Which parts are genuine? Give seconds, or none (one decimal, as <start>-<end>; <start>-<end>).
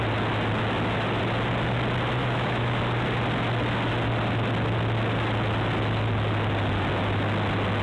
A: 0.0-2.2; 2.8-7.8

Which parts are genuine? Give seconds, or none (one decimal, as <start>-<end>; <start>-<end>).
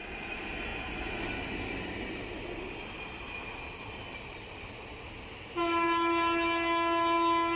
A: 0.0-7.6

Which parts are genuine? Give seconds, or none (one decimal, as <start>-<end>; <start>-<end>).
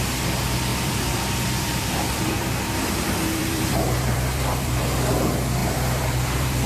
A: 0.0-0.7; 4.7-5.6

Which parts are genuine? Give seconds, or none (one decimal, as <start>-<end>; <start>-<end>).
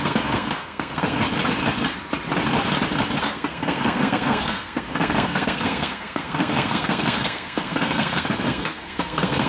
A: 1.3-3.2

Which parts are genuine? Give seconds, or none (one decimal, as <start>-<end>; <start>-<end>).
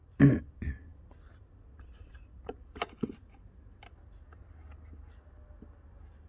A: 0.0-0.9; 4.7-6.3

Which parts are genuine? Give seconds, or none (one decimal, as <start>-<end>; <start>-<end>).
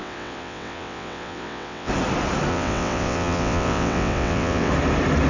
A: 1.9-2.5; 4.7-5.3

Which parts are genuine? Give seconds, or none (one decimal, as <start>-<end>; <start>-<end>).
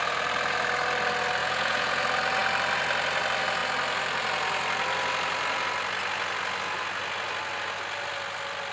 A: 0.0-1.4; 2.0-8.7